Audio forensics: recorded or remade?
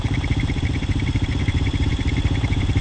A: remade